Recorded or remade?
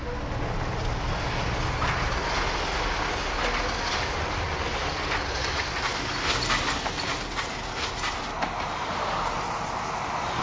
recorded